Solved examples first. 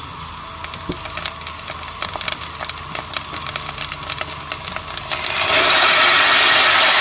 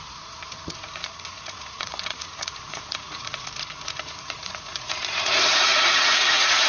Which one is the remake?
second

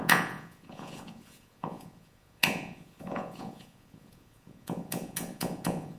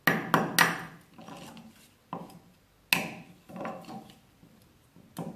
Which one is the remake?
first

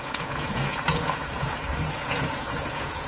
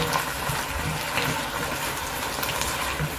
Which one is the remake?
first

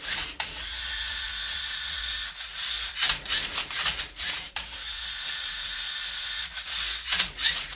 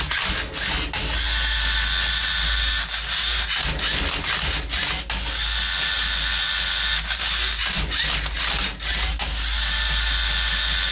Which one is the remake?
first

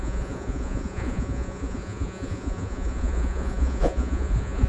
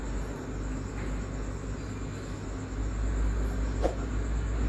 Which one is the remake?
first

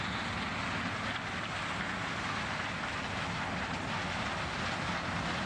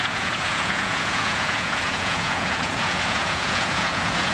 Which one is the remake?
second